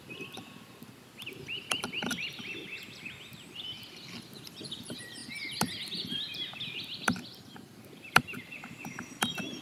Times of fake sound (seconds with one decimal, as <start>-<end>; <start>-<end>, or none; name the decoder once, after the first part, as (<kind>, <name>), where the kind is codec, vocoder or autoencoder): 0.0-9.6 (vocoder, BigVGAN v2)